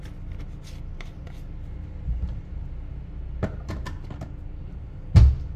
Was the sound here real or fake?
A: real